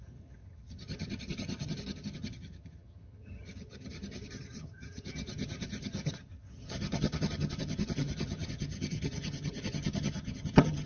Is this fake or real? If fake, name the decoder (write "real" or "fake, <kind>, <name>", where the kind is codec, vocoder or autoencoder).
fake, vocoder, HiFi-GAN